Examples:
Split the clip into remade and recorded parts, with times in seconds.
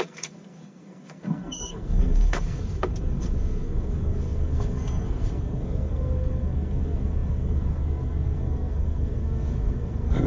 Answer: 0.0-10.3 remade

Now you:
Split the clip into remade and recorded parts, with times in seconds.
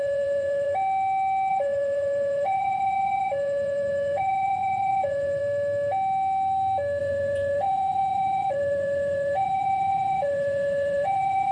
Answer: 0.0-0.7 remade; 0.7-1.5 recorded; 1.5-5.4 remade; 5.4-7.0 recorded; 7.0-11.5 remade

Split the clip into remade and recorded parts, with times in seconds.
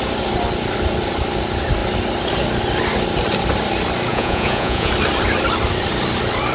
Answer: 0.0-4.1 recorded; 4.1-4.9 remade; 4.9-6.5 recorded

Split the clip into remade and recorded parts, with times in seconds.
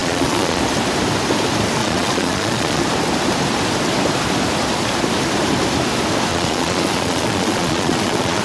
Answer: 0.0-0.6 remade; 0.6-1.8 recorded; 1.8-2.8 remade; 2.8-6.3 recorded; 6.3-8.4 remade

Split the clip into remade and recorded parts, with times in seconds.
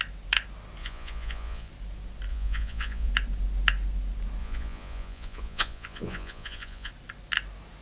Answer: 0.0-0.8 recorded; 0.8-1.7 remade; 1.7-2.3 recorded; 2.3-3.1 remade; 3.1-4.4 recorded; 4.4-6.9 remade; 6.9-7.8 recorded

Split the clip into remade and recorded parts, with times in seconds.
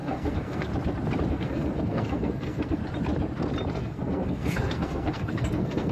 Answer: 0.0-0.7 remade; 0.7-1.3 recorded; 1.3-2.8 remade; 2.8-3.7 recorded; 3.7-5.9 remade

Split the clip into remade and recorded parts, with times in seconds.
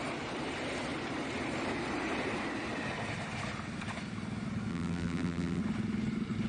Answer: 0.0-4.7 recorded; 4.7-5.6 remade; 5.6-6.5 recorded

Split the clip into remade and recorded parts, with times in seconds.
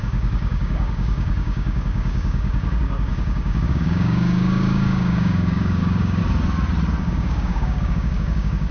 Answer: 0.0-6.2 remade; 6.2-7.0 recorded; 7.0-8.7 remade